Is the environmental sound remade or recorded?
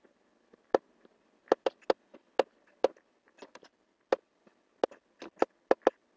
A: recorded